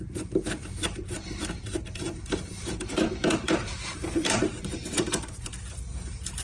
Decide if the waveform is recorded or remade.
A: remade